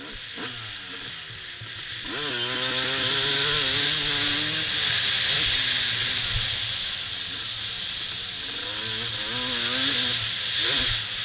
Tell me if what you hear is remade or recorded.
recorded